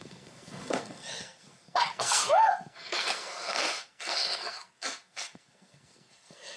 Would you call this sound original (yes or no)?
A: no